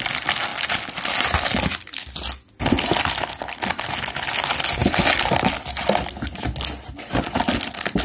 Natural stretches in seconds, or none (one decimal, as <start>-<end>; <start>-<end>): 0.0-8.0